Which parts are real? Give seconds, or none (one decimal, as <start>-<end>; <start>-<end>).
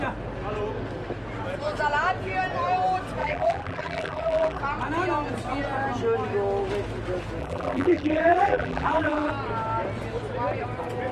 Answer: 0.0-3.2; 4.6-7.4; 9.3-11.1